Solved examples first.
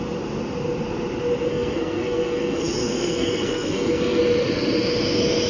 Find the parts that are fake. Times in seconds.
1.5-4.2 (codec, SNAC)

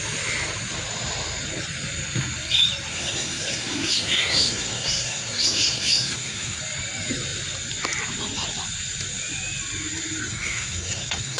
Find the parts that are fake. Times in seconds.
2.9-6.6 (codec, SNAC); 10.2-11.4

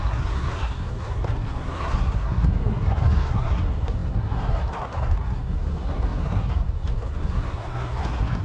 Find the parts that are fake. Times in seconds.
0.0-8.4 (codec, SNAC)

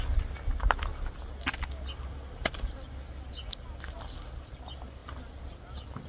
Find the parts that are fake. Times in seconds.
none